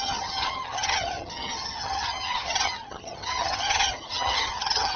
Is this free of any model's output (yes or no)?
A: no